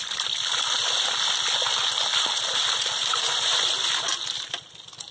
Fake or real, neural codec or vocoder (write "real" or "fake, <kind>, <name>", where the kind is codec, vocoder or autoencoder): real